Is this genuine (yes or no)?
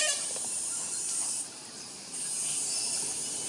no